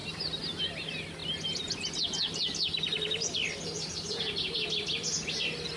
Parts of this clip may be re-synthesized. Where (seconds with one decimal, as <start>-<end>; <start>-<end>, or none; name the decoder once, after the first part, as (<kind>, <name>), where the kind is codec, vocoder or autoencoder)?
none